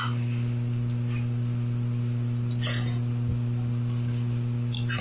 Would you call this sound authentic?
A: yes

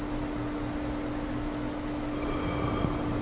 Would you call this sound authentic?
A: yes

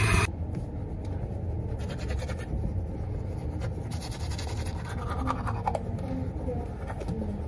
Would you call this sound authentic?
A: yes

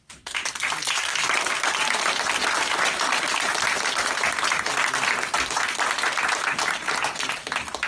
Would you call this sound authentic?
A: yes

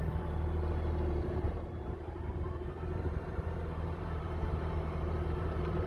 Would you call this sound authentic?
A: no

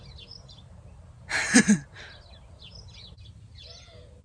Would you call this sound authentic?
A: yes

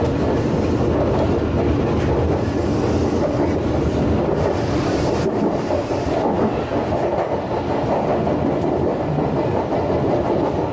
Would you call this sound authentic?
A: yes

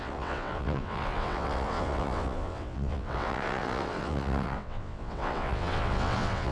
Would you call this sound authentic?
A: no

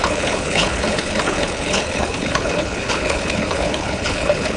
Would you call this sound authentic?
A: no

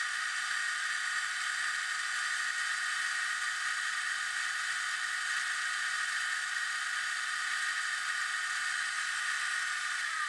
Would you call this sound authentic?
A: yes